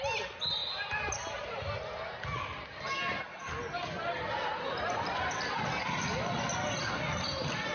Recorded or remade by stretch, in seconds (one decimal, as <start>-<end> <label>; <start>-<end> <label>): 0.0-4.0 recorded; 4.0-6.8 remade; 6.8-7.7 recorded